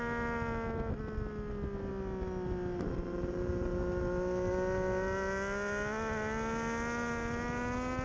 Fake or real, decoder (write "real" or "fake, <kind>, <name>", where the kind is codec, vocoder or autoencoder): real